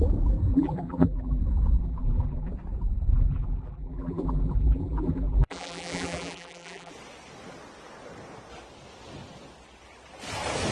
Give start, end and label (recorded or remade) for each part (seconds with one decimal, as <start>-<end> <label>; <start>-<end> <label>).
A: 0.0-0.5 recorded; 0.5-1.4 remade; 1.4-1.8 recorded; 1.8-2.5 remade; 2.5-3.1 recorded; 3.1-6.9 remade; 6.9-10.7 recorded